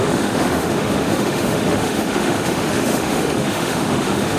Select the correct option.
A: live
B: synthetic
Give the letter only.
B